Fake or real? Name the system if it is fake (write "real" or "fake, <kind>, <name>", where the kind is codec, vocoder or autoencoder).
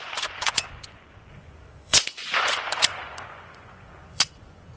fake, vocoder, Vocos